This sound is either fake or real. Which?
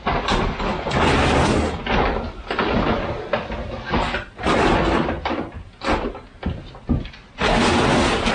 real